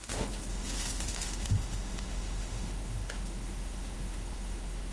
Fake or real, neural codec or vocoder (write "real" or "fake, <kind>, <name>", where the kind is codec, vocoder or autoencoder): fake, autoencoder, DAC-VAE